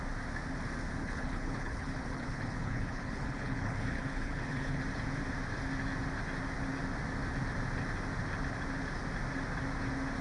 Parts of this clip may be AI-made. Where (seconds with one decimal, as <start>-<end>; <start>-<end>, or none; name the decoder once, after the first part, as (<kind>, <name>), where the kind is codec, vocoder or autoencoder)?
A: 1.0-4.8 (codec, HILCodec)